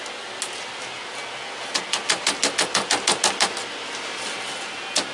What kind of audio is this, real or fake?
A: real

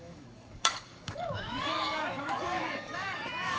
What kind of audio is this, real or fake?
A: fake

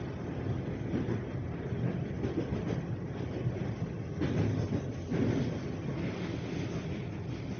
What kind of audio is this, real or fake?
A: real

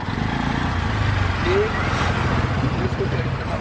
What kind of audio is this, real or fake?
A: real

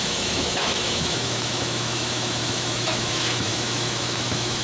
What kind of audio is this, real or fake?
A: fake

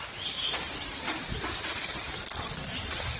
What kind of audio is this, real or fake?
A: real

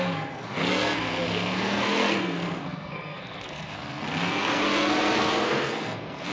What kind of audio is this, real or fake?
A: fake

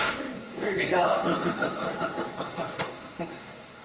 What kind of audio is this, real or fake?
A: fake